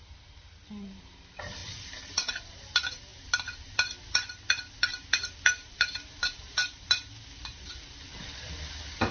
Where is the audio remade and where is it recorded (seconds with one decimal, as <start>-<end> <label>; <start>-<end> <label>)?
0.0-5.6 recorded; 5.6-7.7 remade; 7.7-9.1 recorded